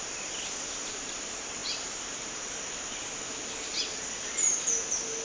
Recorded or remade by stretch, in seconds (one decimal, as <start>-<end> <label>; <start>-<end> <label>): 0.0-5.2 recorded